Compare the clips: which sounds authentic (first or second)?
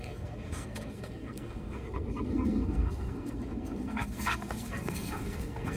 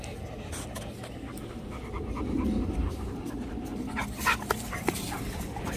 second